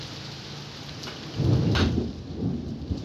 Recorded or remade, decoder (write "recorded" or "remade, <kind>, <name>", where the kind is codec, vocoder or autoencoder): recorded